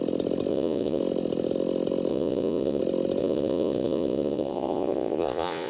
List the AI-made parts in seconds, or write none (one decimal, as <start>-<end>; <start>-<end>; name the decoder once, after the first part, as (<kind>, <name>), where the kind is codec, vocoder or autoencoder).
0.5-1.0 (vocoder, Vocos); 2.1-2.8; 3.2-5.7